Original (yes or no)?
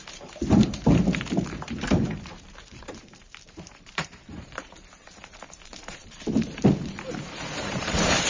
no